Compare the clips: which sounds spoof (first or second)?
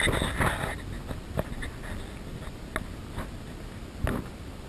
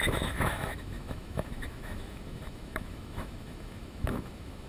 second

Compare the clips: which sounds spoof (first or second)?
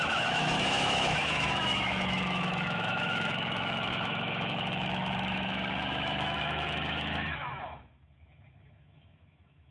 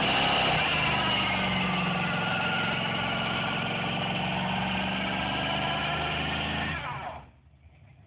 first